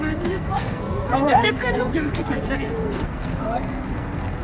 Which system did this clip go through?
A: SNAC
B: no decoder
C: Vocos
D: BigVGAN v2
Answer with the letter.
A